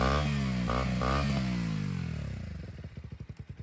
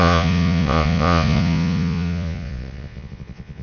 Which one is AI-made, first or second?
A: second